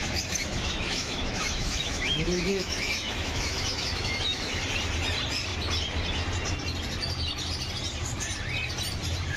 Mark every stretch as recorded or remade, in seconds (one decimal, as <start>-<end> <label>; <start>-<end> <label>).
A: 0.0-4.6 remade; 4.6-9.4 recorded